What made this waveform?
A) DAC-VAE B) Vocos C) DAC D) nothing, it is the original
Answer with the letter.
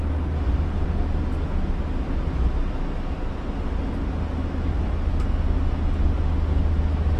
D